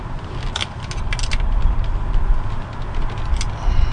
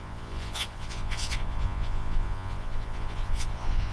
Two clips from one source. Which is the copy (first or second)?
second